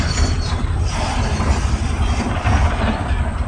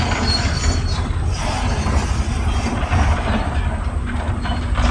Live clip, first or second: second